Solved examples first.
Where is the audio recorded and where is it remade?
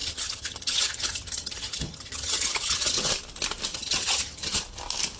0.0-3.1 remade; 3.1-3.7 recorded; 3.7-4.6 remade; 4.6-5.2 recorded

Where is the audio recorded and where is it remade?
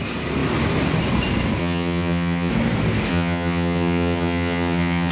0.0-1.6 recorded; 1.6-2.5 remade; 2.5-3.1 recorded; 3.1-5.1 remade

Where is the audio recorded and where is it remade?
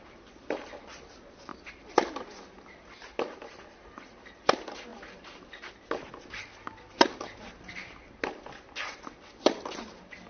0.0-10.3 recorded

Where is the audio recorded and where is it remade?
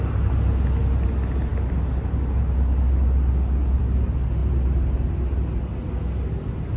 0.0-6.8 recorded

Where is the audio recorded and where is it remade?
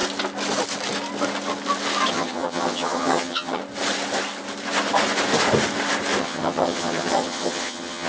0.0-2.1 recorded; 2.1-3.6 remade; 3.6-6.2 recorded; 6.2-8.1 remade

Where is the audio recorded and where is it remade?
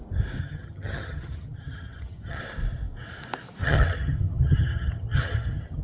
0.0-0.4 recorded; 0.4-2.4 remade; 2.4-3.6 recorded; 3.6-5.8 remade